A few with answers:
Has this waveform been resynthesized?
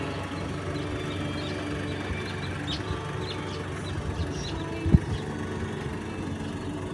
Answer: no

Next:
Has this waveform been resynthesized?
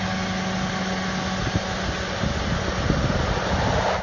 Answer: no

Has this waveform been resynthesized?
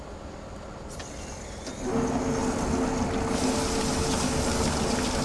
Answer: no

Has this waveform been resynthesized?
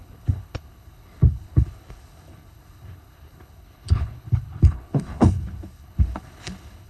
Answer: yes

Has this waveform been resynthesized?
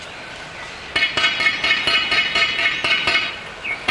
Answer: no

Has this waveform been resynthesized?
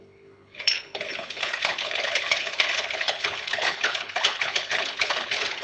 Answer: yes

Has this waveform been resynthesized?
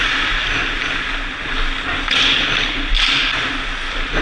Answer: no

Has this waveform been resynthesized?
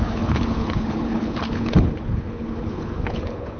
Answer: yes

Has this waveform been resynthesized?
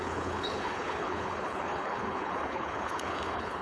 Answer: yes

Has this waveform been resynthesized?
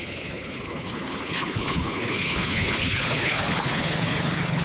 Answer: yes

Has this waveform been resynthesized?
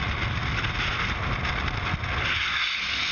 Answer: no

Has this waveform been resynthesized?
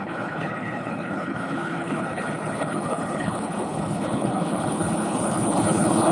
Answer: yes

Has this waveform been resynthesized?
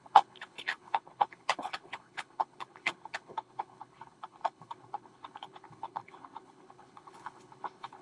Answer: yes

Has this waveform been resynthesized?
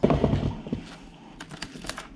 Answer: no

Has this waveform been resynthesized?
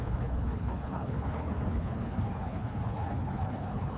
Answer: yes